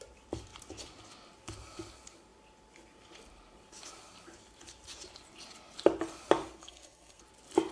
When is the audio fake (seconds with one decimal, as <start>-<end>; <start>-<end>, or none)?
6.6-7.2

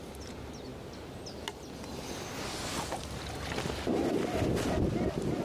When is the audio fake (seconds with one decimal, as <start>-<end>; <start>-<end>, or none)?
none

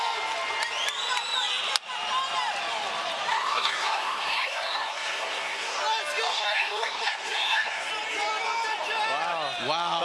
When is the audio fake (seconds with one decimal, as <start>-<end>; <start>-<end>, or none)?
3.3-5.8; 6.3-7.9

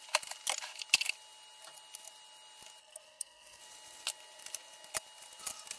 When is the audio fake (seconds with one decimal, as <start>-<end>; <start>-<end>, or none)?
2.8-3.6